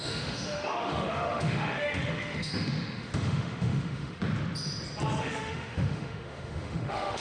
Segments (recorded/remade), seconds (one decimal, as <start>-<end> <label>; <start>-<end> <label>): 0.0-4.2 remade; 4.2-5.2 recorded; 5.2-7.2 remade